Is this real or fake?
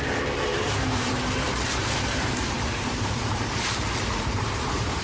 fake